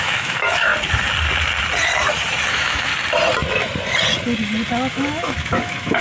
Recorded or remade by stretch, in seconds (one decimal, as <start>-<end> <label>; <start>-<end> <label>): 0.0-0.7 remade; 0.7-2.5 recorded; 2.5-2.9 remade; 2.9-4.9 recorded; 4.9-6.0 remade